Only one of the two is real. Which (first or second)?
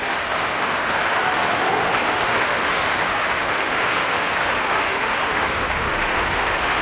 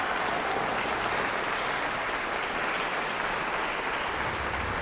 second